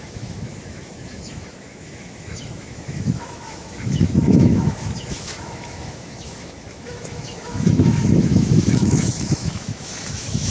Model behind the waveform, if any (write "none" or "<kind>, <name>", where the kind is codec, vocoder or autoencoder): autoencoder, DAC-VAE